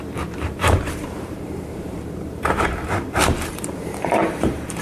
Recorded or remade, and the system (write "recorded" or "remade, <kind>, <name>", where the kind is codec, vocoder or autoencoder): remade, vocoder, BigVGAN v2